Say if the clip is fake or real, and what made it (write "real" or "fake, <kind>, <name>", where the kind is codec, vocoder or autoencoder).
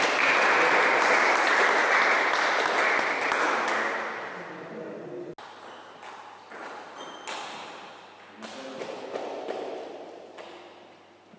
real